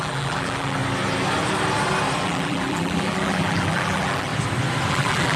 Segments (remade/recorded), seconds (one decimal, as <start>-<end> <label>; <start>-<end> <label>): 0.0-0.8 remade; 0.8-2.2 recorded; 2.2-4.3 remade; 4.3-4.9 recorded; 4.9-5.4 remade